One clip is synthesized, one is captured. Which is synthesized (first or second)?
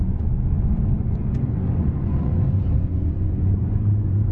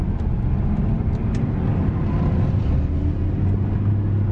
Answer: first